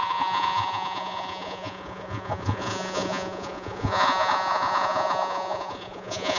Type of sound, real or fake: fake